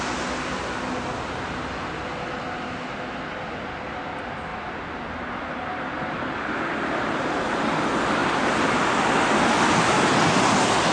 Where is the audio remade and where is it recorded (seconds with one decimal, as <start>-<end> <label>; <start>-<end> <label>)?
0.0-10.9 recorded